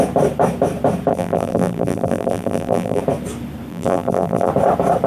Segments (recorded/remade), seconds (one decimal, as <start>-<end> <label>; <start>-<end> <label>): 0.0-1.1 recorded; 1.1-3.0 remade; 3.0-3.7 recorded; 3.7-4.5 remade; 4.5-5.1 recorded